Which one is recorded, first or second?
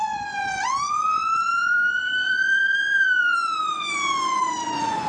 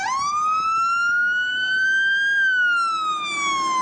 second